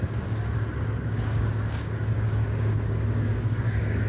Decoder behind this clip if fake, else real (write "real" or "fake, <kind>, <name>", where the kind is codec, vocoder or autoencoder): fake, codec, DAC